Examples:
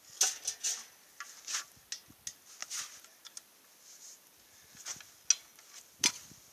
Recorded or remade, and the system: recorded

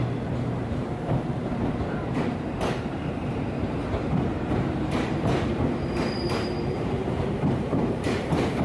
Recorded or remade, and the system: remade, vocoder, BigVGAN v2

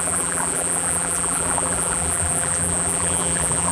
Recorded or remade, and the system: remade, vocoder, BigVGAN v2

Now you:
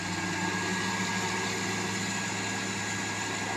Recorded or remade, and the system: recorded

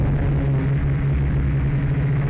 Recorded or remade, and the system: recorded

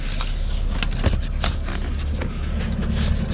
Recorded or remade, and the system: recorded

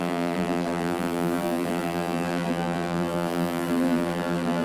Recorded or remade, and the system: remade, vocoder, BigVGAN v2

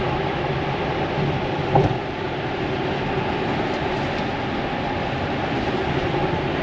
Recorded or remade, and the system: remade, vocoder, BigVGAN v2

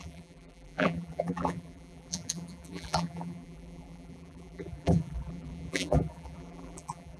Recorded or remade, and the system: remade, vocoder, BigVGAN v2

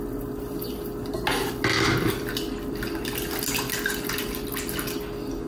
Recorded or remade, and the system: recorded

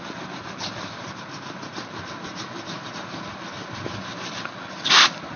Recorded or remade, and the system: recorded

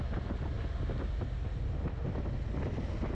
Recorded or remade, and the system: recorded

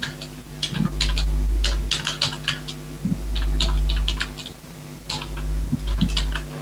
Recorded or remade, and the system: recorded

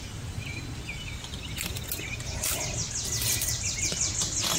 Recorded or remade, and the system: recorded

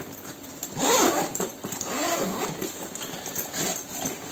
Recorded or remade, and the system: recorded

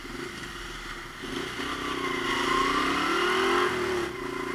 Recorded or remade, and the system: recorded